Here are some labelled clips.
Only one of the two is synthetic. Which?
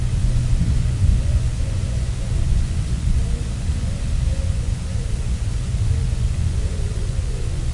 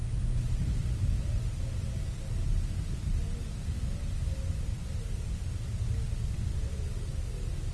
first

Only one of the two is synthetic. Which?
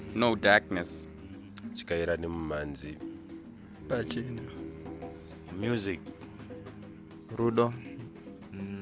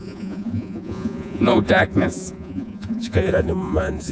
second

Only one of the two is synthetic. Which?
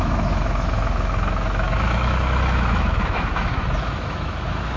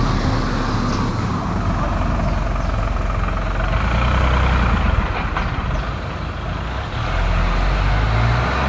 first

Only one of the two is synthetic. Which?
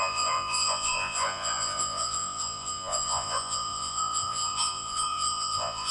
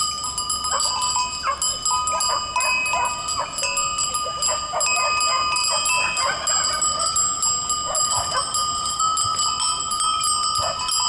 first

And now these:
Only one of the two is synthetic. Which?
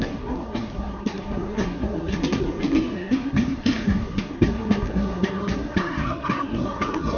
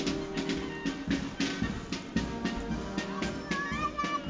first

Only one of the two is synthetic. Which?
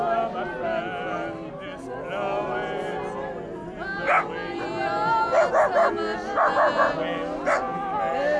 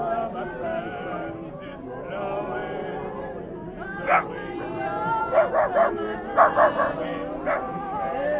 second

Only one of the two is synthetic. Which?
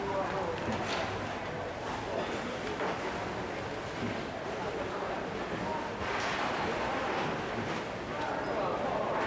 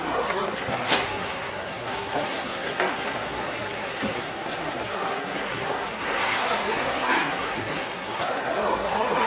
second